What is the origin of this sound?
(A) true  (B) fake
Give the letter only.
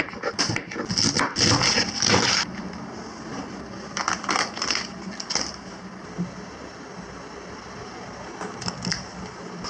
A